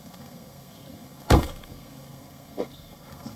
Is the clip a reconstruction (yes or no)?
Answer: yes